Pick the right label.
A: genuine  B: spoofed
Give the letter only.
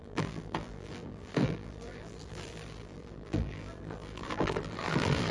B